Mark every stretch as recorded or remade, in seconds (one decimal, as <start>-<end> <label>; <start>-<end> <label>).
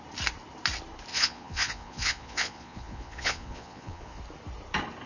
0.0-1.1 recorded; 1.1-4.2 remade; 4.2-5.1 recorded